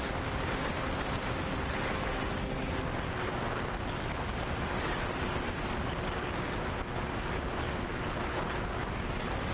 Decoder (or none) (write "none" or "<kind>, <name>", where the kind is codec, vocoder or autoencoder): none